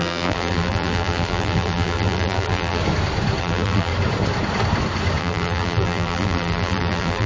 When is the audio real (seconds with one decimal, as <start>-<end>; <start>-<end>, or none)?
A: 2.8-3.4; 3.9-5.2